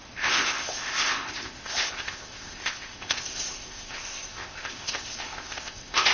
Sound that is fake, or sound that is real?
fake